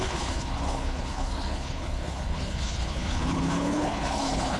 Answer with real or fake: fake